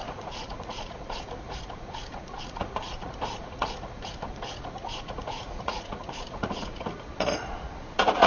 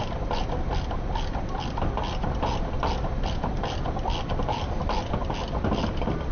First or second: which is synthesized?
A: first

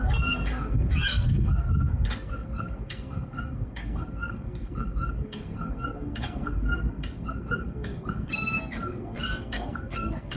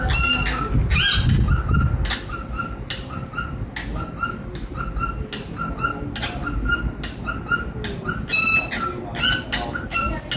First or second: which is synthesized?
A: first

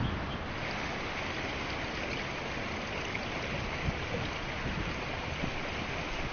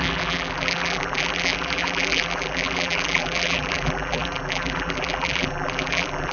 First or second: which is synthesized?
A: second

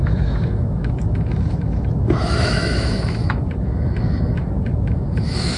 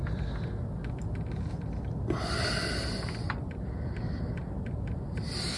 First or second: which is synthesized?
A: first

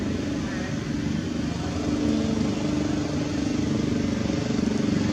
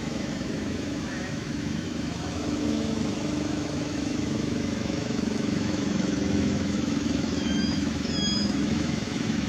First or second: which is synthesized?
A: second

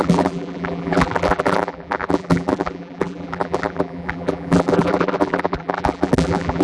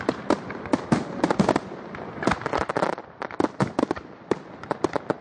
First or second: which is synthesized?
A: first